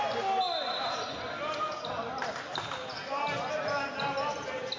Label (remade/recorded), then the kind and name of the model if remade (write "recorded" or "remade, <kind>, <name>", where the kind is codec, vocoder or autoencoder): recorded